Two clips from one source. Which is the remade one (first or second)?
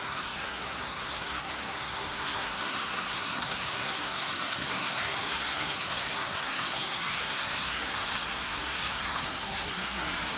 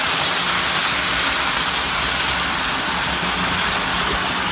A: first